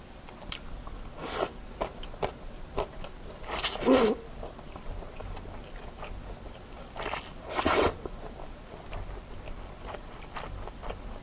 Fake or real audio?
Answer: real